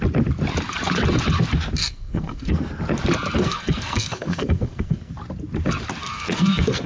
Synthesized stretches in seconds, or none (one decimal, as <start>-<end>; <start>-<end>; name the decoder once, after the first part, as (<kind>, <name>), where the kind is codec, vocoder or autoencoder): 1.8-2.7 (codec, SNAC); 3.4-5.1; 6.0-6.9